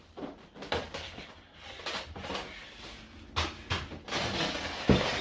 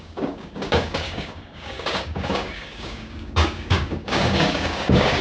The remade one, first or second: second